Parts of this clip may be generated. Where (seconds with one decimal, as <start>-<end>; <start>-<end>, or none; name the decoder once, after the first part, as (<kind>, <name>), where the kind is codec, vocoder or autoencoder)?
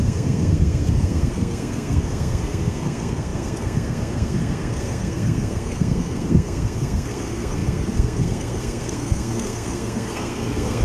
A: 0.0-10.8 (codec, SNAC)